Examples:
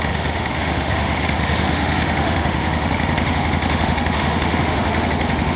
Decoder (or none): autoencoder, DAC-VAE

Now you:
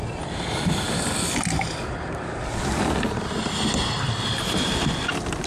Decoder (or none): none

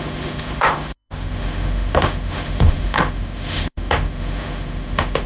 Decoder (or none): autoencoder, DAC-VAE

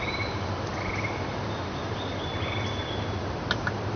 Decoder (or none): none